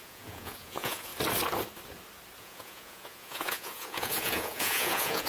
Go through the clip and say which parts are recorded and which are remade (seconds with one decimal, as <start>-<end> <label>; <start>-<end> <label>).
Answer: 0.0-1.1 remade; 1.1-2.4 recorded; 2.4-5.3 remade